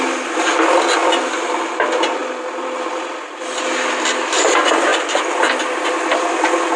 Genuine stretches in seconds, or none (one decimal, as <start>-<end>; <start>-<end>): 0.0-6.8